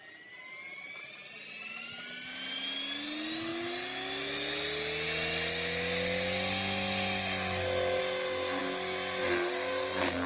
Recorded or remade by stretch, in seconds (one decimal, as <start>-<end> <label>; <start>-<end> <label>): 0.0-10.3 recorded